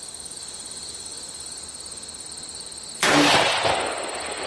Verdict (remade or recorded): remade